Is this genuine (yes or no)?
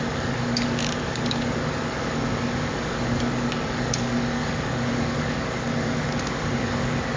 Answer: no